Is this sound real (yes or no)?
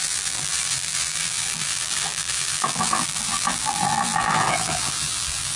no